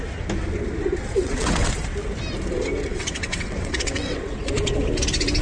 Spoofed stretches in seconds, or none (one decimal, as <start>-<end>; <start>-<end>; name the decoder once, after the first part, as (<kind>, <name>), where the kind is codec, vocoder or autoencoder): 1.0-1.7 (vocoder, WaveNeXt); 2.9-4.5